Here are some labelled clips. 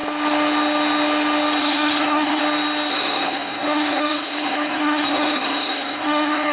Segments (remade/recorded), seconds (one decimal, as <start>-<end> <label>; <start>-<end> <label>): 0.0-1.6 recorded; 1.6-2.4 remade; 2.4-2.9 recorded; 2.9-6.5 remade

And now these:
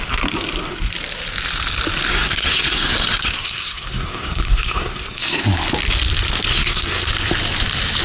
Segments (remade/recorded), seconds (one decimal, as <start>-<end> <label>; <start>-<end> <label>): 0.0-2.1 recorded; 2.1-5.4 remade; 5.4-6.5 recorded; 6.5-7.1 remade; 7.1-8.0 recorded

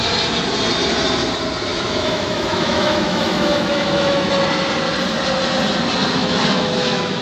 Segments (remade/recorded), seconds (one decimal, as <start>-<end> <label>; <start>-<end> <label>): 0.0-1.7 recorded; 1.7-4.3 remade; 4.3-6.2 recorded; 6.2-7.2 remade